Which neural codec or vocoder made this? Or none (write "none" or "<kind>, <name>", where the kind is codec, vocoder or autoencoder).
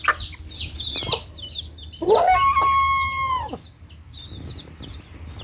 none